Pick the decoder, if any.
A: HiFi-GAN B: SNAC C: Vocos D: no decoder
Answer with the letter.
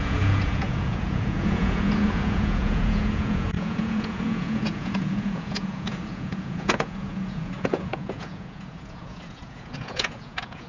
C